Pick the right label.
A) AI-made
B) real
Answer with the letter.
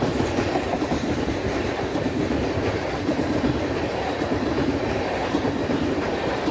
A